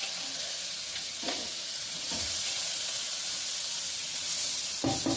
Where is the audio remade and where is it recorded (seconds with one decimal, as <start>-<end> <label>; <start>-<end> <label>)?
0.0-0.8 recorded; 0.8-3.4 remade; 3.4-4.0 recorded; 4.0-4.8 remade; 4.8-5.2 recorded

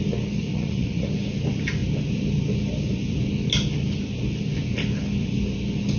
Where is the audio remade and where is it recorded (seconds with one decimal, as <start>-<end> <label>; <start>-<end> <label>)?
0.0-0.5 recorded; 0.5-1.1 remade; 1.1-6.0 recorded

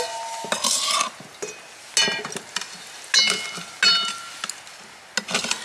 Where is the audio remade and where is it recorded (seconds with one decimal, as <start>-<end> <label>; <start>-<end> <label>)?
0.0-5.6 recorded

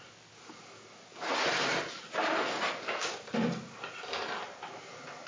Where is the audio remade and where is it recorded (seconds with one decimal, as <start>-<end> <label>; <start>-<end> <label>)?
0.0-5.3 recorded

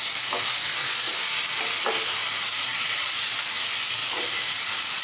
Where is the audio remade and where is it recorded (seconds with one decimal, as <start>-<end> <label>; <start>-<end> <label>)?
0.0-0.8 recorded; 0.8-1.3 remade; 1.3-2.7 recorded; 2.7-3.3 remade; 3.3-5.0 recorded

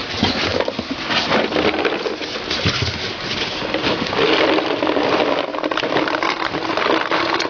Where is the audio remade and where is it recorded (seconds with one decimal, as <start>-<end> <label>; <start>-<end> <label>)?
0.0-7.5 recorded